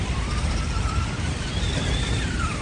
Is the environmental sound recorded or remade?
remade